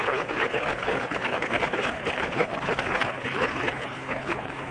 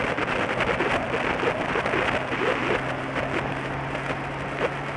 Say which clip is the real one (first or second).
second